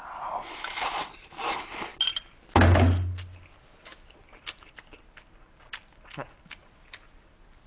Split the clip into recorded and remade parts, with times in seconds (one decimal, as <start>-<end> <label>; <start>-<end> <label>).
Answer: 0.0-7.7 recorded